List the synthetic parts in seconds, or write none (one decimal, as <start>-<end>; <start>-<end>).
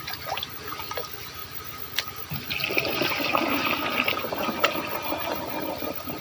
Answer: none